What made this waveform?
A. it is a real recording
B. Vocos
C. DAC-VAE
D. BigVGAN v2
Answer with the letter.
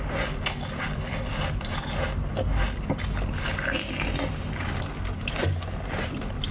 A